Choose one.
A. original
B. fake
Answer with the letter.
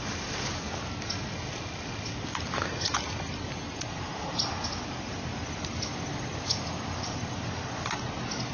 A